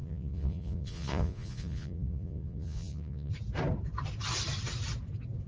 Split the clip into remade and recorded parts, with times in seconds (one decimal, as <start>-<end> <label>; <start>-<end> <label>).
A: 0.0-3.3 remade; 3.3-5.5 recorded